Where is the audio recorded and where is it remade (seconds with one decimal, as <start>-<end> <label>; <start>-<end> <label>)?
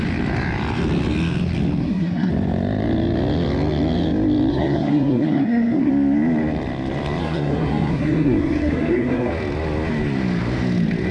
0.0-1.8 recorded; 1.8-2.3 remade; 2.3-4.5 recorded; 4.5-5.9 remade; 5.9-7.2 recorded; 7.2-9.3 remade; 9.3-11.1 recorded